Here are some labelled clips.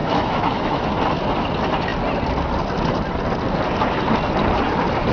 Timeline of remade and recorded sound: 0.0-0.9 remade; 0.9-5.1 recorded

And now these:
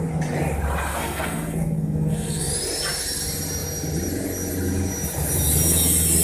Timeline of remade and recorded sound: 0.0-0.9 recorded; 0.9-2.5 remade; 2.5-6.2 recorded

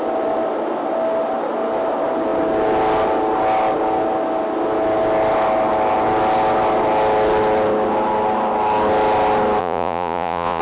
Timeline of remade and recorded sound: 0.0-9.6 recorded; 9.6-10.6 remade

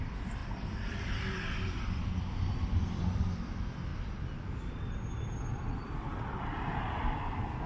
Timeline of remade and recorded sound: 0.0-3.9 remade; 3.9-4.6 recorded; 4.6-7.7 remade